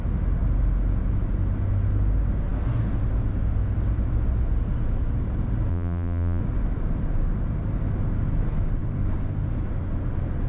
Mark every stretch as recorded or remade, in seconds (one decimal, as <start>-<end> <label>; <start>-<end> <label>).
0.0-5.7 recorded; 5.7-6.4 remade; 6.4-10.5 recorded